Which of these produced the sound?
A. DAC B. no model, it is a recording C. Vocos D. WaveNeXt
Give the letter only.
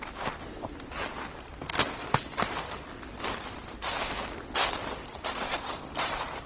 B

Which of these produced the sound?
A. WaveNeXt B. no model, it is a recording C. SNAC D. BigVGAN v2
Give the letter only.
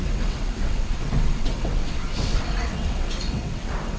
A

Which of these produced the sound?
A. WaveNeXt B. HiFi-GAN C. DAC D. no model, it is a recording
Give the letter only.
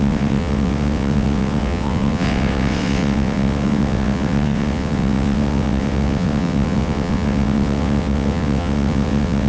A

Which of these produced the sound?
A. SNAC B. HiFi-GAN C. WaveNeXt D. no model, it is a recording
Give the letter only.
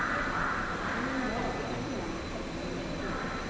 D